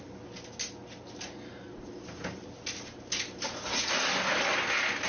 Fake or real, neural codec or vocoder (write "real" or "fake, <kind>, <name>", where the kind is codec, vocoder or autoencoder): real